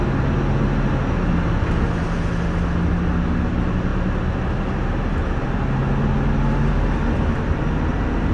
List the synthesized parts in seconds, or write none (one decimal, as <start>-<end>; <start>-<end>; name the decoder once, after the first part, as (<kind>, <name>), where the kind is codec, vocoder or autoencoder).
none